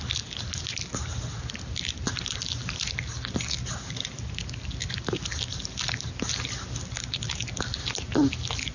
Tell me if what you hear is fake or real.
real